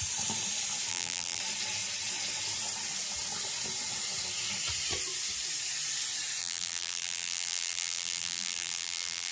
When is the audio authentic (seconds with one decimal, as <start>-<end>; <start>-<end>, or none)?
0.0-0.9; 1.4-6.4